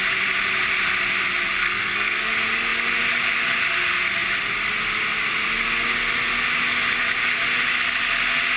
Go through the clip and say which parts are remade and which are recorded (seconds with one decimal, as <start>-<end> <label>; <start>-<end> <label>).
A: 0.0-1.6 recorded; 1.6-2.3 remade; 2.3-8.6 recorded